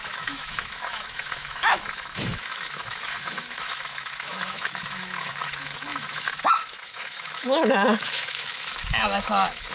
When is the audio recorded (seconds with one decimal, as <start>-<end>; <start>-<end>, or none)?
none